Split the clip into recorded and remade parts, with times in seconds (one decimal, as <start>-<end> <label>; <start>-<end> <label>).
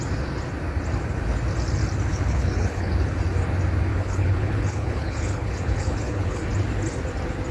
0.0-2.1 recorded; 2.1-2.9 remade; 2.9-3.9 recorded; 3.9-6.4 remade; 6.4-7.5 recorded